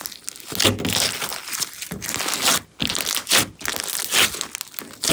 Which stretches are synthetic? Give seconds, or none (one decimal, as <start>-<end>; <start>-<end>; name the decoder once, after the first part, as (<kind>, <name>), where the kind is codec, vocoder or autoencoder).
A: 1.3-2.1 (vocoder, BigVGAN v2)